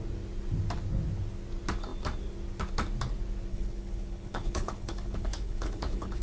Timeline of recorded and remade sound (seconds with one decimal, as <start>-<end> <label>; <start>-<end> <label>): 0.0-3.5 recorded; 3.5-6.2 remade